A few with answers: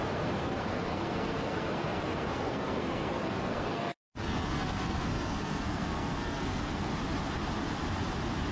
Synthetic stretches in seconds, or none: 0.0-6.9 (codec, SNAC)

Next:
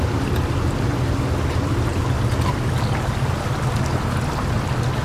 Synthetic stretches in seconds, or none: none

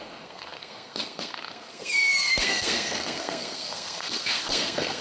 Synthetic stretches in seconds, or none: 0.0-5.0 (codec, SNAC)

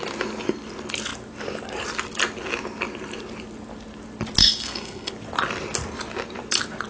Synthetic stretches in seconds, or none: 4.4-5.1 (codec, SNAC)

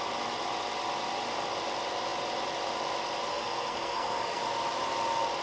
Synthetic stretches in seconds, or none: 3.3-4.4 (codec, SNAC)